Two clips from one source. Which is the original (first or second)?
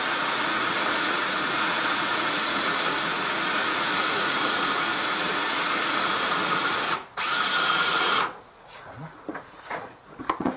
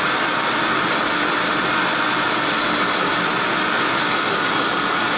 second